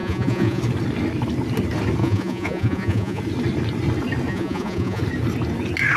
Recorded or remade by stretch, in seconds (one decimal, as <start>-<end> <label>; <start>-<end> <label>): 0.0-0.6 remade; 0.6-2.0 recorded; 2.0-3.2 remade; 3.2-4.3 recorded; 4.3-5.0 remade; 5.0-6.0 recorded